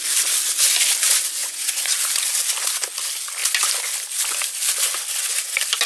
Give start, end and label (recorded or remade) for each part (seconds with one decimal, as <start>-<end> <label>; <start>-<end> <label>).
0.0-1.4 recorded; 1.4-1.9 remade; 1.9-5.9 recorded